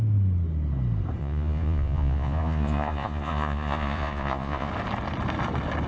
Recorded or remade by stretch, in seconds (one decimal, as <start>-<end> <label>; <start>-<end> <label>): 0.0-1.2 recorded; 1.2-4.7 remade; 4.7-5.9 recorded